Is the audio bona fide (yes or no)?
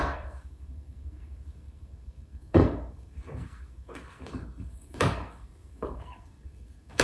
no